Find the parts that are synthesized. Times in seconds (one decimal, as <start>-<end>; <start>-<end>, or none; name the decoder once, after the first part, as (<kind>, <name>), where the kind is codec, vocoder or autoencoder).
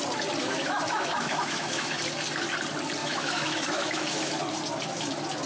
0.4-2.0 (autoencoder, DAC-VAE); 3.0-4.4